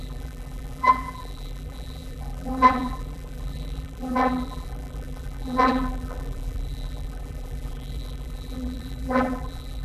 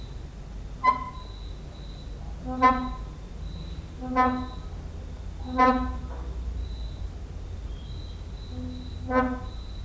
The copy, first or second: first